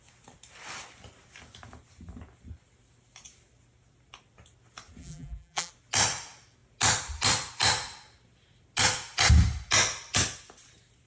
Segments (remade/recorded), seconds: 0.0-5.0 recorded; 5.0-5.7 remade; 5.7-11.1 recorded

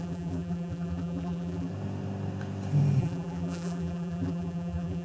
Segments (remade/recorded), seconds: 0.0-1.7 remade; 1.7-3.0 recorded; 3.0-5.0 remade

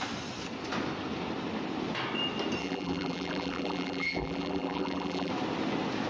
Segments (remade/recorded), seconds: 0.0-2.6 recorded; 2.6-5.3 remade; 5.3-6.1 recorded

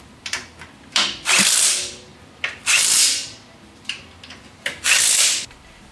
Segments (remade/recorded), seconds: 0.0-5.9 remade

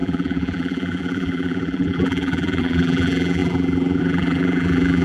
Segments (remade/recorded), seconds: 0.0-5.0 remade

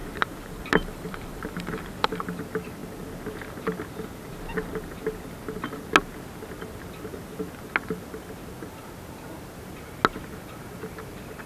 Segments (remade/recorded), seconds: 0.0-2.4 remade; 2.4-11.5 recorded

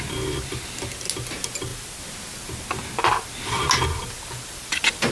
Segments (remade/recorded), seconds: 0.0-5.1 recorded

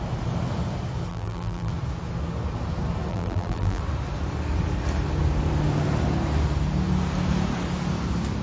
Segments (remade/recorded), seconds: 0.0-1.1 recorded; 1.1-1.7 remade; 1.7-3.1 recorded; 3.1-3.8 remade; 3.8-8.4 recorded